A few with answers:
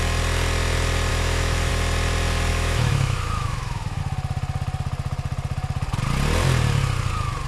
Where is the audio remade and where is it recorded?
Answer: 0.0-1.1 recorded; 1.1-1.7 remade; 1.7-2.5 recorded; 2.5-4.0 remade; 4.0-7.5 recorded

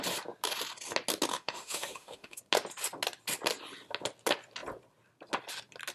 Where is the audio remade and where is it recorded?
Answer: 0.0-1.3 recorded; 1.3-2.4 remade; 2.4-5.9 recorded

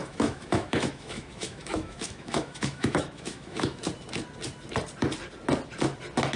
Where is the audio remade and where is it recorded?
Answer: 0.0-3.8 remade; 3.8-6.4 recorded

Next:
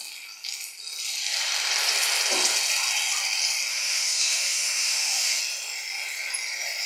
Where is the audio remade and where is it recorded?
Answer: 0.0-3.7 recorded; 3.7-5.4 remade; 5.4-6.9 recorded